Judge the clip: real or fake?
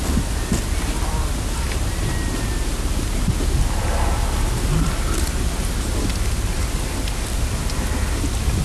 real